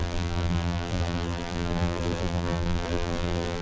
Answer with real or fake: fake